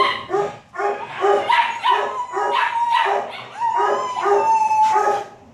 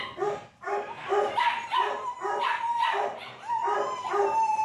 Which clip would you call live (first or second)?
first